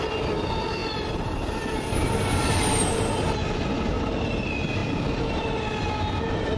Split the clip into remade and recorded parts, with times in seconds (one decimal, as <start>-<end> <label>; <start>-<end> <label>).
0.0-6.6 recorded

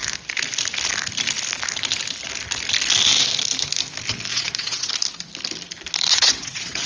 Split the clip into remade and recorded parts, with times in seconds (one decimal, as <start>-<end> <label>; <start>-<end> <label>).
0.0-4.3 recorded; 4.3-4.9 remade; 4.9-6.1 recorded; 6.1-6.9 remade

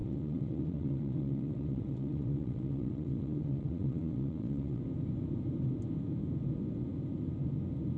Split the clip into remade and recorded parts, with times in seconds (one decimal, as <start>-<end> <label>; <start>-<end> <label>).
0.0-4.8 remade; 4.8-8.0 recorded

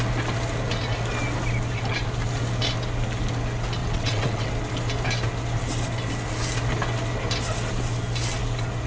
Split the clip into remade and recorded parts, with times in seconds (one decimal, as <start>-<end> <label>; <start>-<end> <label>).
0.0-3.8 recorded; 3.8-4.5 remade; 4.5-8.9 recorded